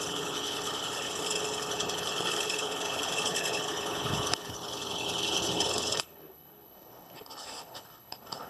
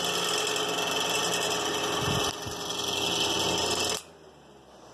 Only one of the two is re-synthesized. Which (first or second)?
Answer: first